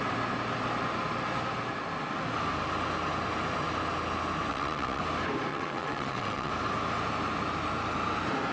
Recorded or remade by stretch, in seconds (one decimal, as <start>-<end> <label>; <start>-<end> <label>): 0.0-4.5 recorded; 4.5-5.0 remade; 5.0-5.5 recorded; 5.5-6.5 remade; 6.5-8.5 recorded

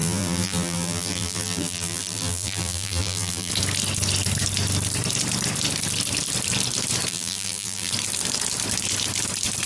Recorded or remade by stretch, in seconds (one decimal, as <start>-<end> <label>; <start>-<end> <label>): 0.0-3.5 remade; 3.5-7.1 recorded; 7.1-7.9 remade; 7.9-9.7 recorded

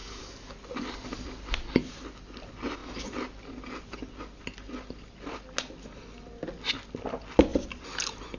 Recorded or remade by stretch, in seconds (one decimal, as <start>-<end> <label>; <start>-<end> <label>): 0.0-0.5 remade; 0.5-8.4 recorded

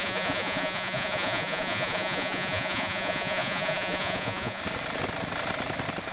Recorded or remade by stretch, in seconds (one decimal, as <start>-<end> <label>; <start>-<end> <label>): 0.0-4.6 remade; 4.6-6.1 recorded

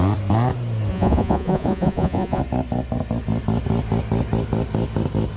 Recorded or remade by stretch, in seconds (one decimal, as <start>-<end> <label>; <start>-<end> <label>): 0.0-0.9 recorded; 0.9-2.4 remade; 2.4-5.4 recorded

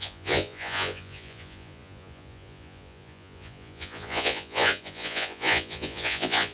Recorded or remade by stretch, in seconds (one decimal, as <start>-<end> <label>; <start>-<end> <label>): 0.0-6.5 remade

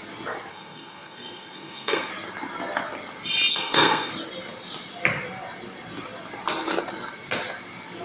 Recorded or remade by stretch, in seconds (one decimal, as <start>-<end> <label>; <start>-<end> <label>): 0.0-0.5 recorded; 0.5-2.1 remade; 2.1-3.5 recorded; 3.5-4.1 remade; 4.1-8.0 recorded

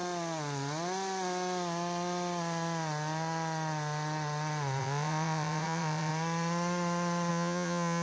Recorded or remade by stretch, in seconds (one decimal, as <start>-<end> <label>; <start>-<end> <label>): 0.0-4.8 recorded; 4.8-6.1 remade; 6.1-7.3 recorded; 7.3-8.0 remade